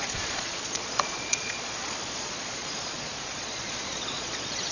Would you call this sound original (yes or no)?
no